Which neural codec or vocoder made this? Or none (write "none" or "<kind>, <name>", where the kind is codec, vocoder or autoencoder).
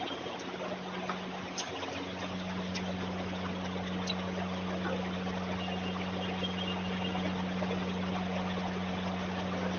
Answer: none